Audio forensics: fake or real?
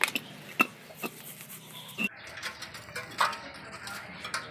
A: real